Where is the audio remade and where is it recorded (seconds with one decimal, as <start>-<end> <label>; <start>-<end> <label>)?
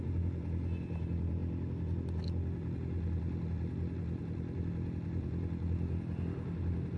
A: 0.0-7.0 recorded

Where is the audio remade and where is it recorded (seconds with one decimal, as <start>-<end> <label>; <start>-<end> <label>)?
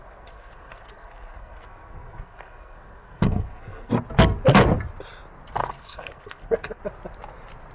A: 0.0-3.9 remade; 3.9-5.6 recorded; 5.6-6.8 remade; 6.8-7.7 recorded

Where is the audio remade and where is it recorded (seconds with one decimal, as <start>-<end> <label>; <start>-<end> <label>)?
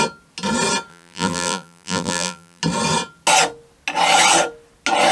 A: 0.0-0.9 recorded; 0.9-2.6 remade; 2.6-5.1 recorded